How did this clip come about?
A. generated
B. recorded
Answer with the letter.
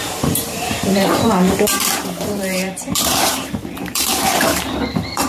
A